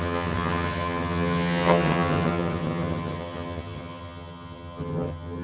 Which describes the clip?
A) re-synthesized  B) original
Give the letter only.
A